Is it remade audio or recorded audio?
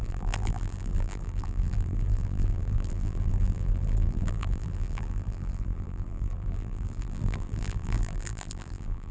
remade